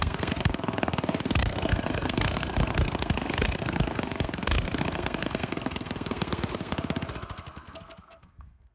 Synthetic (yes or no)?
yes